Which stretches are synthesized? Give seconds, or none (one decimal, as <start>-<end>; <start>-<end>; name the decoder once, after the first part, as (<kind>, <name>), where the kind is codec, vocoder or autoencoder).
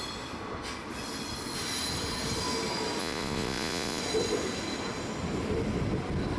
3.0-4.0 (vocoder, Vocos)